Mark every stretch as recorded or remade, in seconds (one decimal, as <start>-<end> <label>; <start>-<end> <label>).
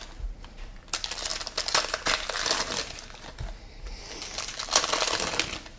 0.0-5.8 recorded